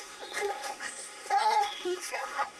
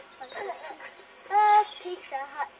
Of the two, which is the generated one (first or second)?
first